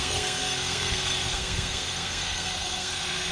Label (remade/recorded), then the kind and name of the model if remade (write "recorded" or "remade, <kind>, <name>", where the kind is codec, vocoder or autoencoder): remade, codec, SNAC